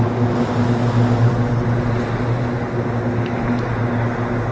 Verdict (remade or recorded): recorded